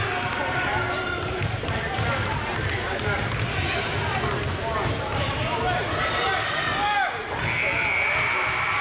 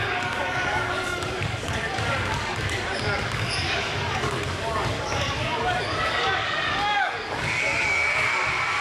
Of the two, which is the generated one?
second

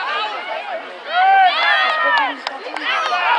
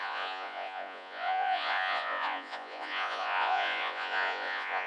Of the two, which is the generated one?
second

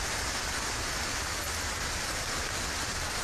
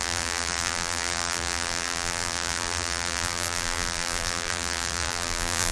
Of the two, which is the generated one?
second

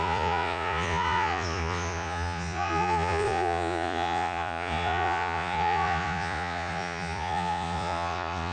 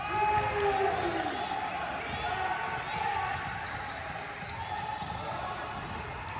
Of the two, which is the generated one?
first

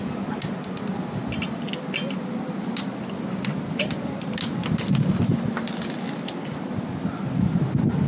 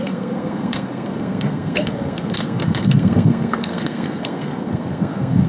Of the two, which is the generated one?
second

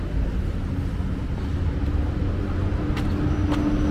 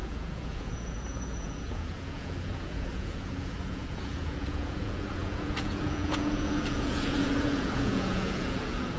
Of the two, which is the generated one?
second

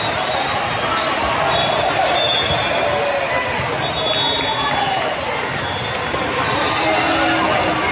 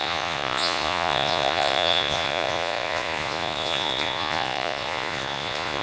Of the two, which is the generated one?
second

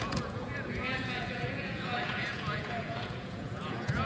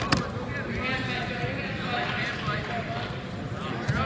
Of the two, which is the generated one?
first